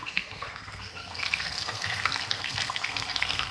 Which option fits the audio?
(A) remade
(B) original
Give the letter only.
A